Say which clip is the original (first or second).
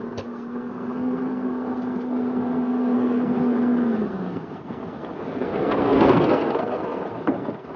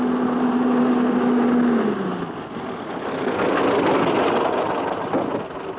second